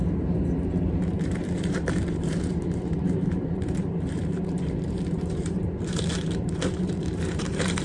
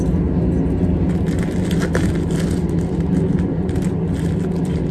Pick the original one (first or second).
second